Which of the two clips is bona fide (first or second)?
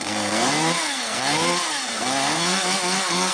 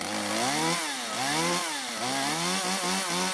second